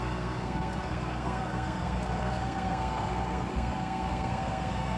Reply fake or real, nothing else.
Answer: fake